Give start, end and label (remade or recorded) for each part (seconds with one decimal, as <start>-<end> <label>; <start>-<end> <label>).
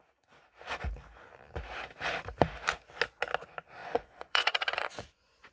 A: 0.0-3.8 recorded; 3.8-5.5 remade